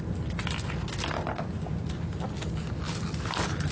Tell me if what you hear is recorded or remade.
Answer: recorded